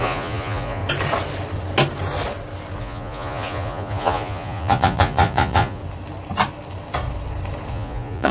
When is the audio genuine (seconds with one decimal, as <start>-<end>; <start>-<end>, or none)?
0.8-2.8; 5.8-7.7